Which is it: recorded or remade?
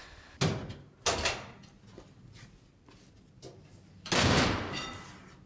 recorded